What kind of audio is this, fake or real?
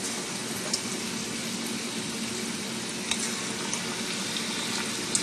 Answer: real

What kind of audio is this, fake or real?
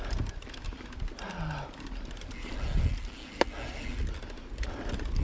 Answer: real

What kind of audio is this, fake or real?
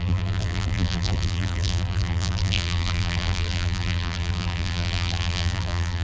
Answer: fake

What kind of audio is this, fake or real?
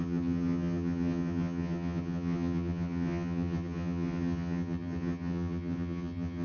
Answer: fake